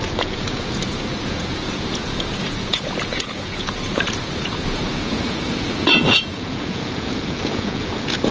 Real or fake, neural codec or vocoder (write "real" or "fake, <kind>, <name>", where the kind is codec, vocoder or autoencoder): fake, vocoder, Vocos